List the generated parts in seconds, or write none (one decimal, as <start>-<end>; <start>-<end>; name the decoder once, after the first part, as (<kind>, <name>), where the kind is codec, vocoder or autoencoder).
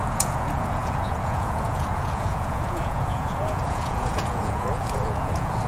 0.0-5.7 (vocoder, Vocos)